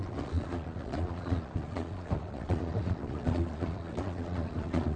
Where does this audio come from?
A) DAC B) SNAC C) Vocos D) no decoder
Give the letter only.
C